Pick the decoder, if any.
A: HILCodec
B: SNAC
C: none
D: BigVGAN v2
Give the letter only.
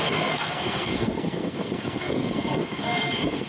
B